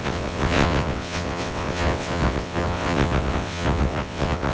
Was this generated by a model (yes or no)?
yes